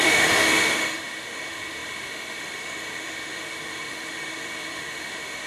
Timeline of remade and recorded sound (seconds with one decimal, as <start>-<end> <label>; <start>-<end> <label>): 0.0-5.5 remade